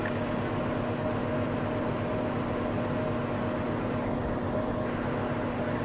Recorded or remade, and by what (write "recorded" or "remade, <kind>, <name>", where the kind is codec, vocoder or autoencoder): recorded